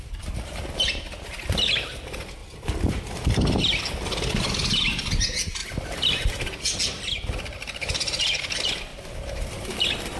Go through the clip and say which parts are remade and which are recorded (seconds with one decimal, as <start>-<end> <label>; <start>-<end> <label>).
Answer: 0.0-2.4 recorded; 2.4-3.8 remade; 3.8-5.6 recorded; 5.6-6.3 remade; 6.3-8.9 recorded; 8.9-9.7 remade; 9.7-10.2 recorded